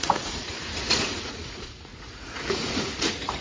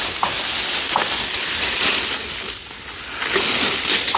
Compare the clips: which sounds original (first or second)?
second